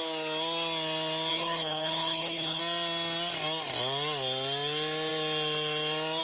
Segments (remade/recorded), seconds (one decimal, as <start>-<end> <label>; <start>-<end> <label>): 0.0-1.3 recorded; 1.3-2.6 remade; 2.6-6.2 recorded